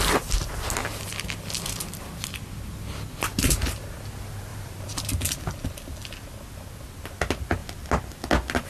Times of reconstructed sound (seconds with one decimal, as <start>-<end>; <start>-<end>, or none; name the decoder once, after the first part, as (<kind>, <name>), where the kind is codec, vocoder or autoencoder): 3.3-3.8 (vocoder, BigVGAN v2); 4.5-5.1